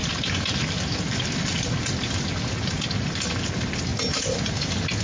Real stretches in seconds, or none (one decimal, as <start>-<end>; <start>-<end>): 0.0-5.0